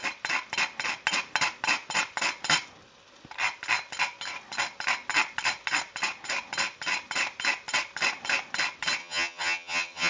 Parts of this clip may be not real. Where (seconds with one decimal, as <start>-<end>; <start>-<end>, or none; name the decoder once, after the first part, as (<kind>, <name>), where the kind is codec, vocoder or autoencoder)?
9.0-10.1 (vocoder, HiFi-GAN)